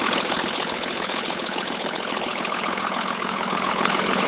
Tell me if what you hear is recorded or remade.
remade